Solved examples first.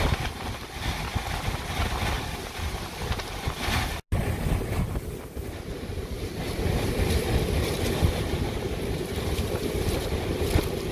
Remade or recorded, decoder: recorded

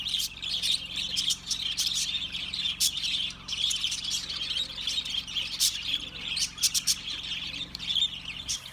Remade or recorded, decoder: remade, vocoder, BigVGAN v2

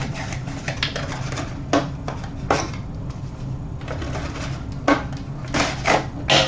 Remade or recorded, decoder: recorded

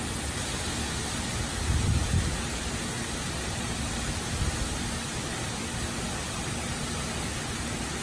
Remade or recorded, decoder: recorded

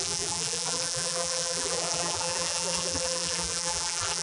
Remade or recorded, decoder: remade, vocoder, BigVGAN v2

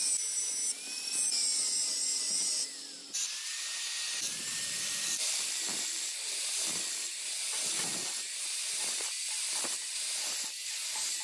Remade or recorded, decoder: remade, vocoder, BigVGAN v2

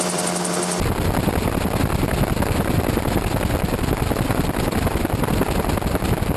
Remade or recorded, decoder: recorded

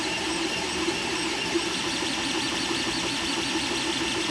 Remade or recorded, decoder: recorded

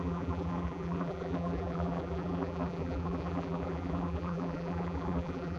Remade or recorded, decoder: remade, vocoder, BigVGAN v2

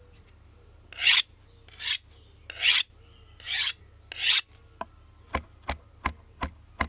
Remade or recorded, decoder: recorded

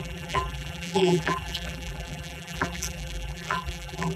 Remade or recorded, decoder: remade, vocoder, BigVGAN v2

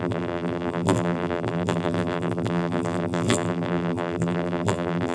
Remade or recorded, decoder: remade, vocoder, BigVGAN v2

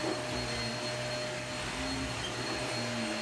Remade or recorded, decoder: recorded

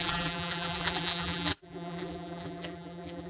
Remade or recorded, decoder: remade, vocoder, BigVGAN v2